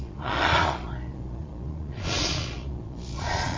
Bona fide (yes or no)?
no